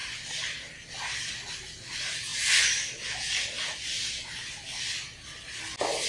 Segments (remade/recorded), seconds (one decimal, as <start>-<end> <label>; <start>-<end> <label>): 0.0-6.1 recorded